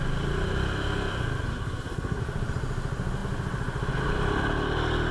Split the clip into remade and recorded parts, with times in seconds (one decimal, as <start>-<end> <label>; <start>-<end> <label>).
0.0-1.5 recorded; 1.5-2.2 remade; 2.2-5.1 recorded